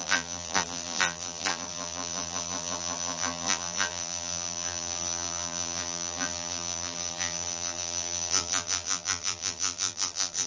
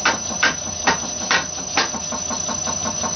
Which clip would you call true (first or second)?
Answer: second